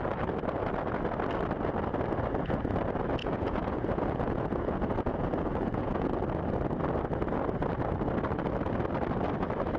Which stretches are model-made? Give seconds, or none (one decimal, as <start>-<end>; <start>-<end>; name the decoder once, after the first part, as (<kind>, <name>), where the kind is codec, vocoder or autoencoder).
3.2-6.1 (vocoder, Vocos)